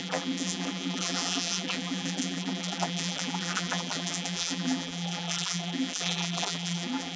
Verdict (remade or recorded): remade